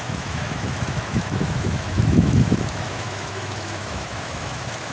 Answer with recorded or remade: remade